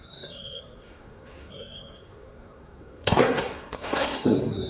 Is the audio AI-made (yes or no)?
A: yes